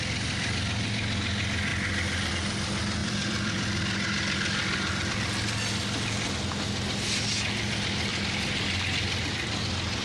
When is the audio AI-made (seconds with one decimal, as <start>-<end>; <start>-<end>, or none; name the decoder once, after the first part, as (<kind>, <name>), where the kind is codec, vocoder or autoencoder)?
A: 1.7-2.3 (vocoder, BigVGAN v2); 3.0-5.1; 8.1-9.5